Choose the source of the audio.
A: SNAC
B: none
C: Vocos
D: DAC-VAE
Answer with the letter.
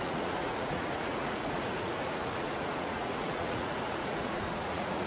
C